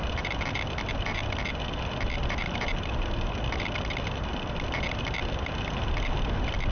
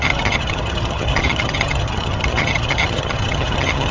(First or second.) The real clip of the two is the first